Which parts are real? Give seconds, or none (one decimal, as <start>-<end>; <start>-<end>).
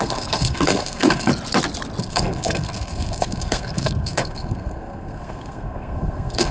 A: 1.3-2.0